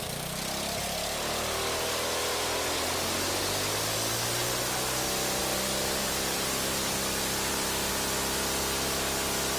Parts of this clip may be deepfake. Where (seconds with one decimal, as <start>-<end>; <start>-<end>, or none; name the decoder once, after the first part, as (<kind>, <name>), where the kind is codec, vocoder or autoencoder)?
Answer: 5.4-7.9 (vocoder, BigVGAN v2)